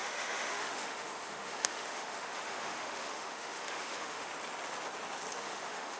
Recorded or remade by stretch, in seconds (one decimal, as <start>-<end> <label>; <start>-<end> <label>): 0.0-4.3 remade; 4.3-5.4 recorded; 5.4-6.0 remade